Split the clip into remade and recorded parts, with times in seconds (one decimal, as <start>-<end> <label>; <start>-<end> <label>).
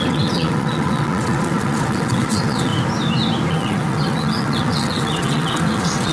0.0-2.7 remade; 2.7-3.5 recorded; 3.5-6.1 remade